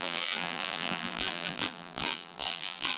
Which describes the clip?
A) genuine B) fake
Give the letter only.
B